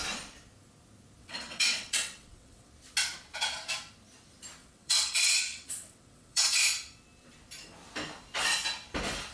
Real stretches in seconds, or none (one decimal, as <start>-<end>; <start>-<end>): 0.0-1.2; 2.7-4.6; 6.6-9.3